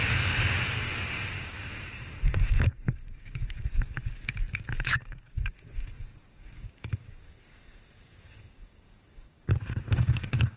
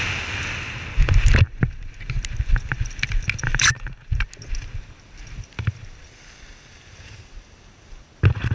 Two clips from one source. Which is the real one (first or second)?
second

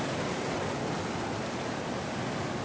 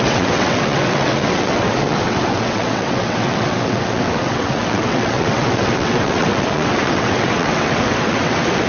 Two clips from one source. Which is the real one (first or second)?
first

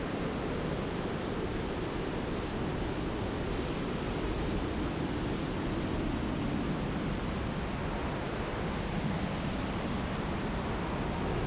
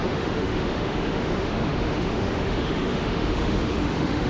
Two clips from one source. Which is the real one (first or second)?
first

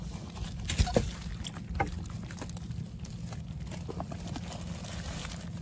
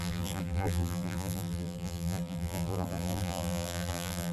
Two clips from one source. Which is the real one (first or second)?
first